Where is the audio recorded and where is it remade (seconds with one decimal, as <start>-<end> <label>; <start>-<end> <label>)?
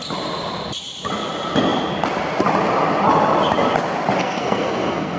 0.0-4.2 recorded; 4.2-5.2 remade